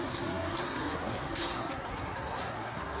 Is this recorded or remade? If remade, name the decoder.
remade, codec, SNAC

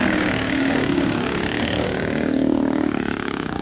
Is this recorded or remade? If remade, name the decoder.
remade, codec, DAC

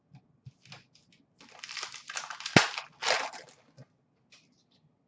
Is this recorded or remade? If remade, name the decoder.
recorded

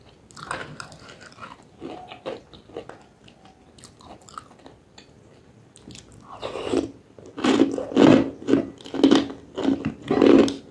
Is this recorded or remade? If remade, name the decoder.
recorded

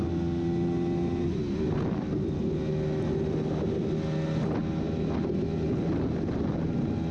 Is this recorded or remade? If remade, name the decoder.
recorded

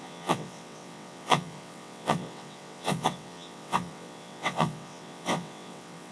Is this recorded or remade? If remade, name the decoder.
remade, vocoder, WaveNeXt